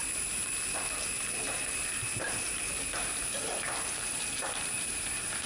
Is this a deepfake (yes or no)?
yes